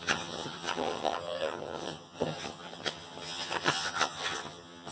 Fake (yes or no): yes